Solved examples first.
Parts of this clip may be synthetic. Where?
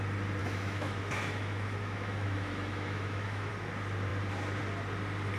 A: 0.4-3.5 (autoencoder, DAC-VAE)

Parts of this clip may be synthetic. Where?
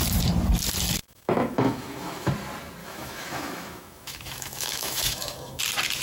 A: 1.0-2.3 (autoencoder, DAC-VAE); 2.8-5.6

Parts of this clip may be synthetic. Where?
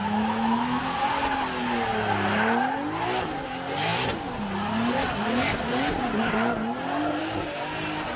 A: 0.0-0.8 (autoencoder, DAC-VAE)